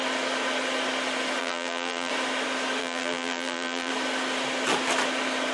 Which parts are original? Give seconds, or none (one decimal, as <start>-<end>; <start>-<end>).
0.0-1.4; 2.1-2.8; 3.9-5.5